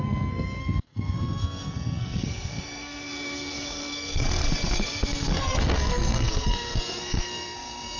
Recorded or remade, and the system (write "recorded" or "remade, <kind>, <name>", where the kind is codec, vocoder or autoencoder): remade, codec, SNAC